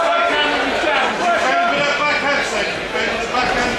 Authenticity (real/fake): real